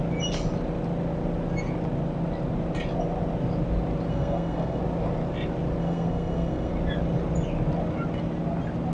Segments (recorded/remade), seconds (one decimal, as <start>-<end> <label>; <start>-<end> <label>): 0.0-4.1 recorded; 4.1-4.8 remade; 4.8-5.8 recorded; 5.8-6.7 remade; 6.7-8.9 recorded